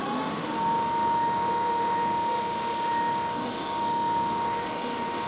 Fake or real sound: fake